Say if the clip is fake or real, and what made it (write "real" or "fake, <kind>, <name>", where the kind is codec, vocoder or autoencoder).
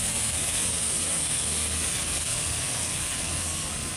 fake, codec, SNAC